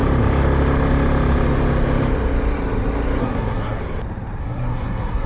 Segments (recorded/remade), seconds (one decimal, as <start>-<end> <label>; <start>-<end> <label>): 0.0-3.2 recorded; 3.2-3.8 remade; 3.8-4.4 recorded; 4.4-5.3 remade